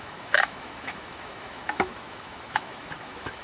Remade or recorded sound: remade